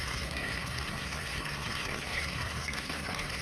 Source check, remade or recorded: remade